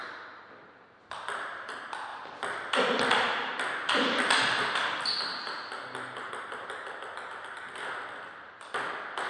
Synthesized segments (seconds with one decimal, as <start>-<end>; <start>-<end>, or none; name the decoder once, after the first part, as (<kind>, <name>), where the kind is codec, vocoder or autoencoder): 2.1-6.3 (vocoder, BigVGAN v2)